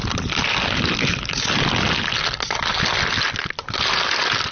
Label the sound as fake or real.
real